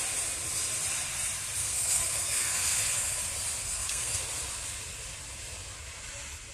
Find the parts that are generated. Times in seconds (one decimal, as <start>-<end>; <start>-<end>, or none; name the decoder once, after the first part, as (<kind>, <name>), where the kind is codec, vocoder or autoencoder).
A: 1.6-3.2 (codec, SNAC); 3.6-4.2